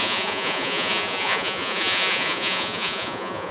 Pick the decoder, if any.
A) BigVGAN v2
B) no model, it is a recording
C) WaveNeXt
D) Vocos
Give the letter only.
D